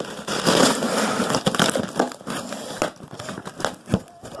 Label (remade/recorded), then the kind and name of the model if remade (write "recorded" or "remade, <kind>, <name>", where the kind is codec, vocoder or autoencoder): recorded